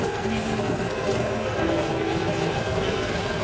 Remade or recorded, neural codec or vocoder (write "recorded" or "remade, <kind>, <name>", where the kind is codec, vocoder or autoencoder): remade, codec, SNAC